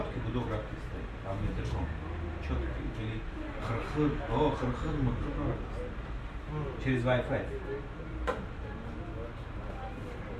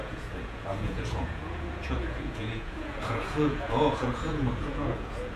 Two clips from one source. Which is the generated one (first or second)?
second